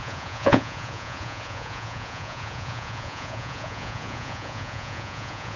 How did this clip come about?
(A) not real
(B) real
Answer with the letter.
A